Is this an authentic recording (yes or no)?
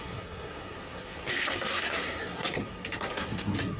no